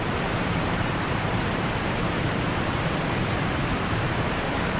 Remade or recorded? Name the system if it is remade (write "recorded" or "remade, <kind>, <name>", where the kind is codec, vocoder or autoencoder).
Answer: remade, vocoder, BigVGAN v2